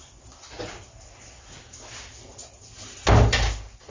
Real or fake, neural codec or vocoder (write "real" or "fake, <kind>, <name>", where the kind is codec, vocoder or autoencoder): real